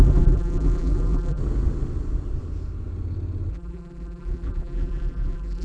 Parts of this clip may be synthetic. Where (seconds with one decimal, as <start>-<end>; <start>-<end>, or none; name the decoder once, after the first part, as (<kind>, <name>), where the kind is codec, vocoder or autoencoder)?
0.0-1.4 (vocoder, BigVGAN v2); 3.5-5.6